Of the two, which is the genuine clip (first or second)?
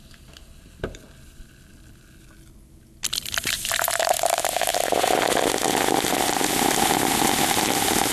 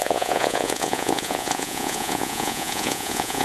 first